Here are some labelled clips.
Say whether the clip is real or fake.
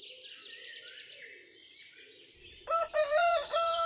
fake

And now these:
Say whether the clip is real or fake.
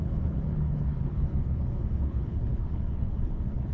fake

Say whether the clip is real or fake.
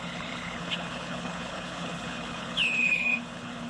fake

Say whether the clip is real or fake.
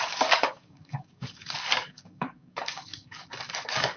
fake